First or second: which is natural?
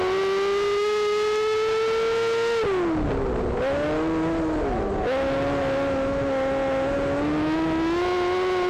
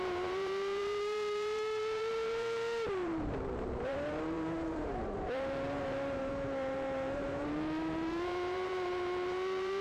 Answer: first